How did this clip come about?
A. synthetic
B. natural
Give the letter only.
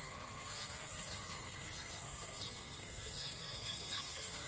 A